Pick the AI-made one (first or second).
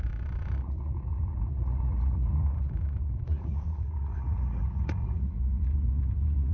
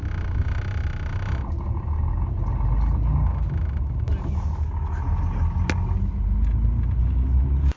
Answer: first